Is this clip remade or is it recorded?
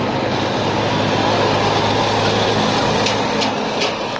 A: recorded